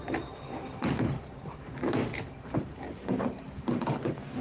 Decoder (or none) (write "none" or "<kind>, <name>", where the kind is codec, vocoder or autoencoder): vocoder, BigVGAN v2